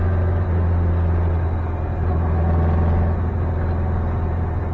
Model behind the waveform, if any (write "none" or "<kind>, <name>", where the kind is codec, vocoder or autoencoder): none